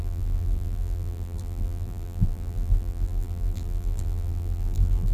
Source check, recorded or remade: remade